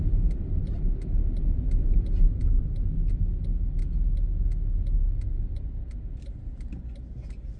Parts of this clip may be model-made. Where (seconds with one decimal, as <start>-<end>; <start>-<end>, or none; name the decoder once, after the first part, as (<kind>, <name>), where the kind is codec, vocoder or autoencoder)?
none